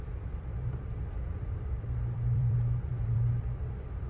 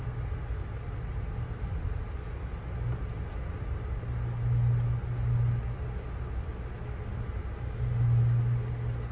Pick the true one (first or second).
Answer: second